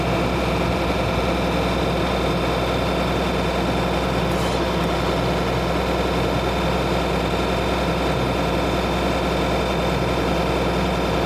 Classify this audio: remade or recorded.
recorded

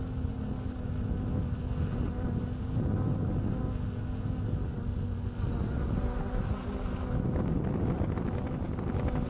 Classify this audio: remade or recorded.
recorded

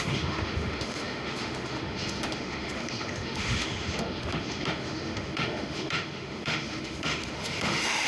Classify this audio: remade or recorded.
remade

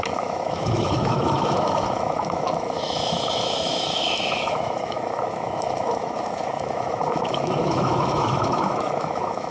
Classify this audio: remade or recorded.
remade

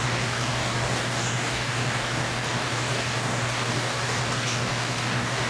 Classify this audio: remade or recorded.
remade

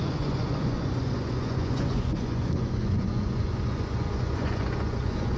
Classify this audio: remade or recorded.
remade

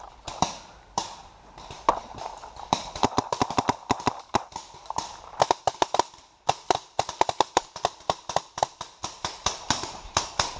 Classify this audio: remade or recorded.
remade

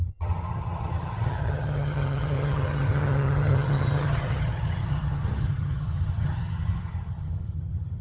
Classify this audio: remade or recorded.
remade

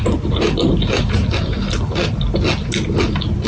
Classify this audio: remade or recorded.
recorded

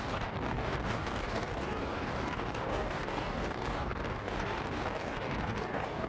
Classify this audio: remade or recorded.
remade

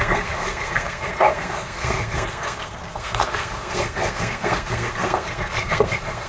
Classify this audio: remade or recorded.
remade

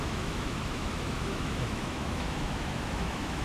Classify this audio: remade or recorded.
remade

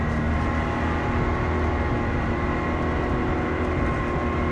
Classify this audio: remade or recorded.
recorded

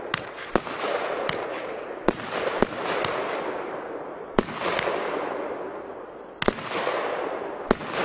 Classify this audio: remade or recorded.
recorded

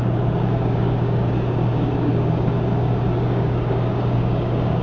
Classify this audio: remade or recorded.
remade